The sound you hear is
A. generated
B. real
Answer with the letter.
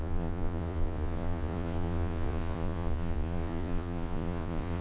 A